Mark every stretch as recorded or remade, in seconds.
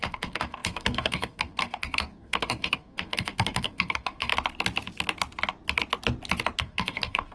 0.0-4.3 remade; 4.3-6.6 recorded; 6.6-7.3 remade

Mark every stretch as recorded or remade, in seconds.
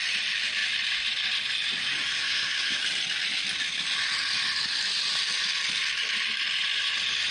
0.0-2.1 recorded; 2.1-2.8 remade; 2.8-7.3 recorded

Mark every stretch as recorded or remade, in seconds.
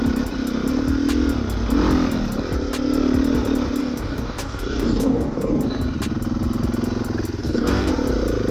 0.0-3.8 recorded; 3.8-5.5 remade; 5.5-7.4 recorded; 7.4-7.9 remade; 7.9-8.5 recorded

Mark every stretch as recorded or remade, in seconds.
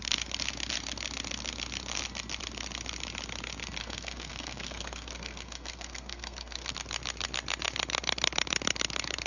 0.0-3.8 recorded; 3.8-6.7 remade; 6.7-9.3 recorded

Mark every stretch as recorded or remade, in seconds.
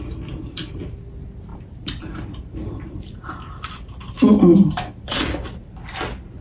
0.0-1.5 recorded; 1.5-3.3 remade; 3.3-4.3 recorded; 4.3-5.7 remade; 5.7-6.4 recorded